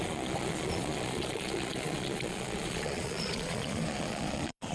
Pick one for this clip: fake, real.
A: fake